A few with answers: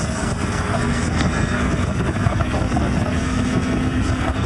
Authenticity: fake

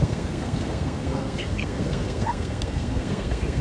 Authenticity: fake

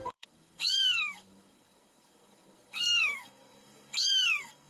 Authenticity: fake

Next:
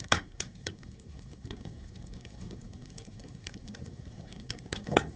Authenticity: fake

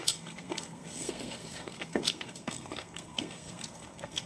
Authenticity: fake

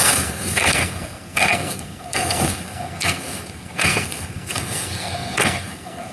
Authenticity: fake